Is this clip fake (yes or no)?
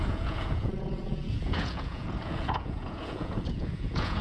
yes